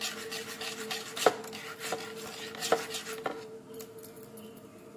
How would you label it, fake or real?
real